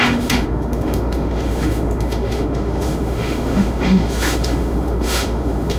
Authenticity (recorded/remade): remade